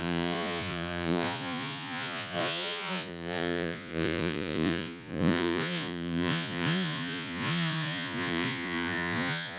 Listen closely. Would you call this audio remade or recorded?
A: remade